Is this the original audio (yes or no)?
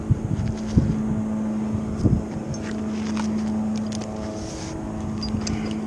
yes